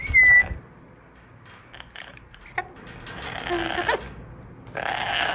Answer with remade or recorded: recorded